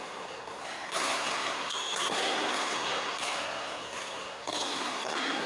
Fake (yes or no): yes